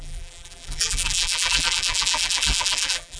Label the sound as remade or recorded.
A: remade